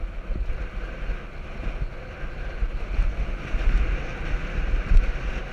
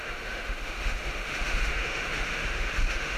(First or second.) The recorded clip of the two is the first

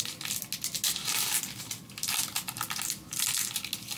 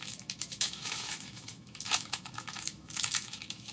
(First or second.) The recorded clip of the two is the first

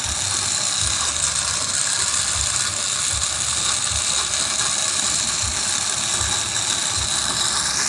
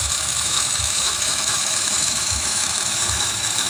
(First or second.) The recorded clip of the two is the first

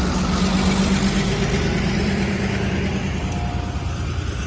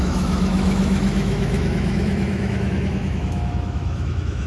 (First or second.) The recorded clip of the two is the first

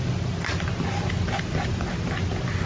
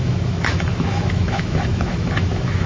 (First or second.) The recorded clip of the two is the first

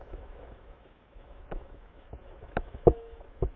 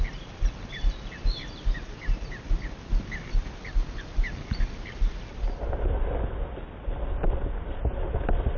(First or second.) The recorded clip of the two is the second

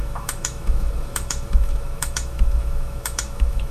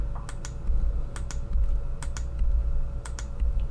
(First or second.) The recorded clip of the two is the second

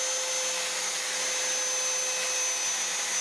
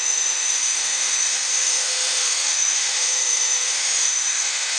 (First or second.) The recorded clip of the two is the first